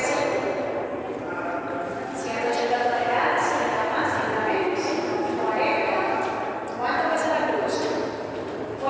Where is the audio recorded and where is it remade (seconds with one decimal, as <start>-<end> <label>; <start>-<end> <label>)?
0.0-8.9 recorded